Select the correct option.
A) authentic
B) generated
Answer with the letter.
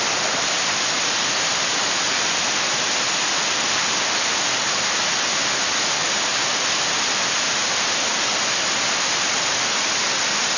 A